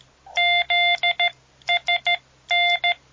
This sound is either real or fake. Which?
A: real